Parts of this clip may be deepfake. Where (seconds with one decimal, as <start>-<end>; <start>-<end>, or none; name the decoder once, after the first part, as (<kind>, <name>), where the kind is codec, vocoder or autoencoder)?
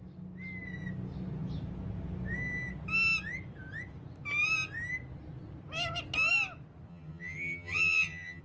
6.9-8.4 (vocoder, HiFi-GAN)